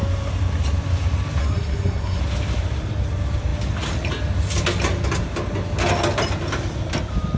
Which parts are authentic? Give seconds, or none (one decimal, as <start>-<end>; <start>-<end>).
0.0-1.4; 2.2-7.4